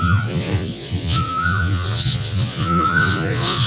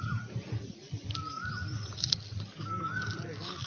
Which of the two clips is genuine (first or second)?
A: second